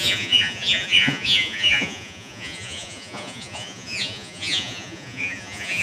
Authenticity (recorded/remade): remade